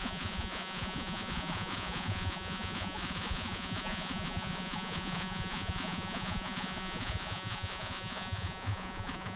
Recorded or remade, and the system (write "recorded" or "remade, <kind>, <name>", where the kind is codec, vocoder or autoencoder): remade, vocoder, Vocos